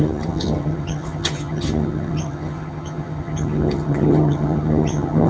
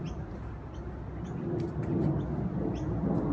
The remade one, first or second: first